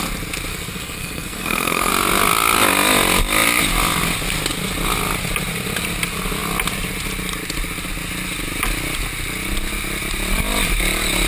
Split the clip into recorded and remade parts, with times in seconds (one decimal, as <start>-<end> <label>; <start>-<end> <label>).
0.0-0.5 recorded; 0.5-1.9 remade; 1.9-11.3 recorded